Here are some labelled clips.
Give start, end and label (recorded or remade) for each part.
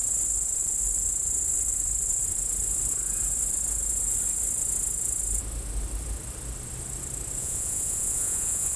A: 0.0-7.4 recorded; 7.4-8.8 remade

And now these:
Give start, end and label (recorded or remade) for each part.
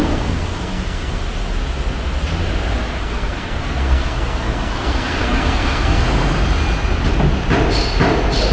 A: 0.0-1.2 remade; 1.2-3.0 recorded; 3.0-6.0 remade; 6.0-8.5 recorded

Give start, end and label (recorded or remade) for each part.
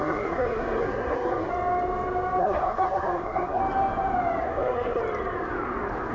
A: 0.0-1.5 remade; 1.5-2.4 recorded; 2.4-3.6 remade; 3.6-4.4 recorded; 4.4-5.0 remade; 5.0-6.1 recorded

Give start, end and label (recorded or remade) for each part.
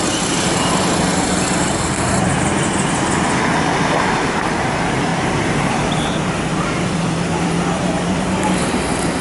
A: 0.0-2.5 remade; 2.5-3.8 recorded; 3.8-9.2 remade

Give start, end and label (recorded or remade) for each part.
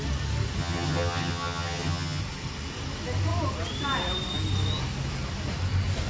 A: 0.0-0.6 recorded; 0.6-2.2 remade; 2.2-6.1 recorded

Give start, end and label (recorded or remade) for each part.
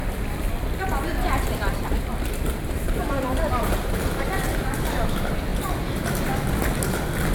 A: 0.0-1.7 recorded; 1.7-5.5 remade; 5.5-6.5 recorded; 6.5-7.3 remade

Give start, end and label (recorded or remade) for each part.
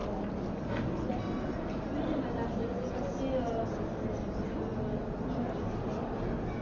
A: 0.0-6.6 recorded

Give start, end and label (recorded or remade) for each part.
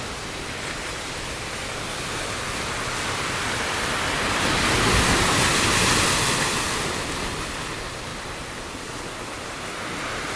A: 0.0-10.4 recorded